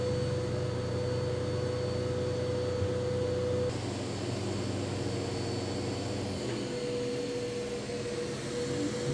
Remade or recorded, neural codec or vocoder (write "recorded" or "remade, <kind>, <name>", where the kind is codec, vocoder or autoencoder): recorded